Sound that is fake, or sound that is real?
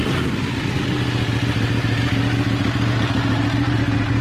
real